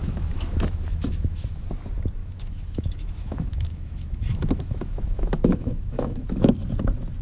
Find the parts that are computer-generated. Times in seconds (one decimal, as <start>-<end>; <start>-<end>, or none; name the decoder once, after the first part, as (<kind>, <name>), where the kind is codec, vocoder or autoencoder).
0.0-1.6 (autoencoder, DAC-VAE); 2.2-6.5